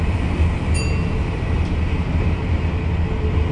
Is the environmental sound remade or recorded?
recorded